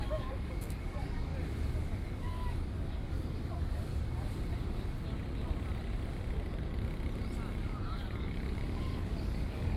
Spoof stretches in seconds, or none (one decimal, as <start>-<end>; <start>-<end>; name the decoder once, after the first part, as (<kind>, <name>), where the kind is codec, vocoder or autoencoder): 0.0-1.3 (codec, DAC); 1.8-3.9; 7.6-9.8